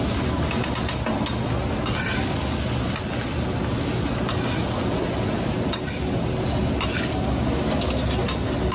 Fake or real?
real